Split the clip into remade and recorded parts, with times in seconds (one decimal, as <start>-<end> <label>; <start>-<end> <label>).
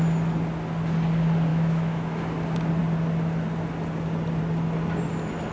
0.0-1.5 recorded; 1.5-2.2 remade; 2.2-5.5 recorded